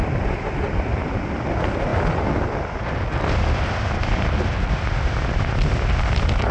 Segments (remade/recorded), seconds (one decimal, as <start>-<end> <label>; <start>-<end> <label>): 0.0-6.5 recorded